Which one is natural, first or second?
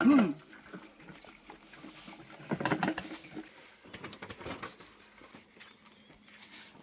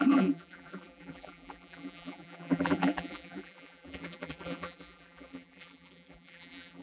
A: first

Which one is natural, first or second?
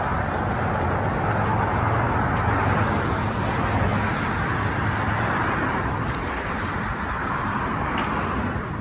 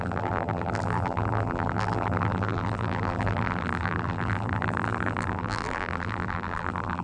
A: first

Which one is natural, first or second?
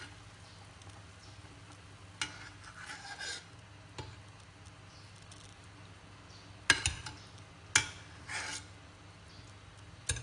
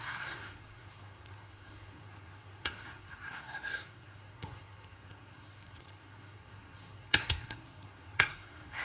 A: first